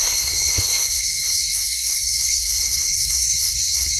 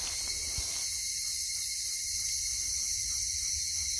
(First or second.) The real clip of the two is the second